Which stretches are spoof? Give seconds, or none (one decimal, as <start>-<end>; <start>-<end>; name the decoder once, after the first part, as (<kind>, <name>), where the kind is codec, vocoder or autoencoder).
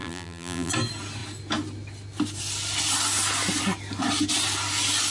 0.0-0.7 (vocoder, BigVGAN v2)